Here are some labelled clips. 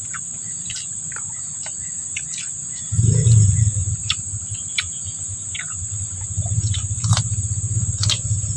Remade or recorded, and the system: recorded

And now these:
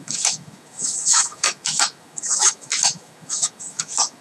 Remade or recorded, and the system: remade, autoencoder, DAC-VAE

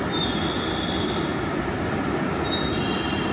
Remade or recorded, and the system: recorded